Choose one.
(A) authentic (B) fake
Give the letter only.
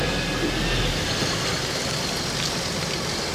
A